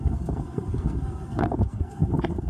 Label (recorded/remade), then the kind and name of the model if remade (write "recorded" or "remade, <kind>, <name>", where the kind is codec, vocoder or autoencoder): remade, codec, SNAC